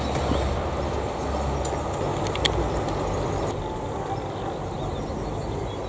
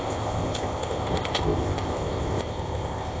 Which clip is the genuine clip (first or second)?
first